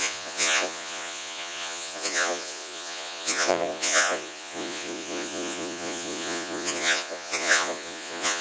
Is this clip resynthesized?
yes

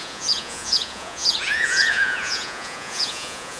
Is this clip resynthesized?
yes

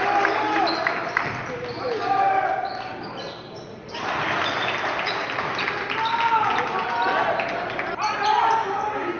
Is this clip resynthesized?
no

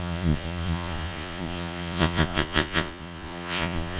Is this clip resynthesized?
yes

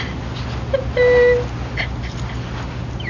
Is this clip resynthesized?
no